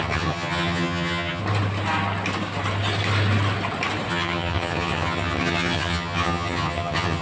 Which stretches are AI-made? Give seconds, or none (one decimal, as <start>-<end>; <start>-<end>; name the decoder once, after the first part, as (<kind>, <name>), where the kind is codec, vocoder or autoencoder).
0.0-1.4 (vocoder, HiFi-GAN); 4.1-7.2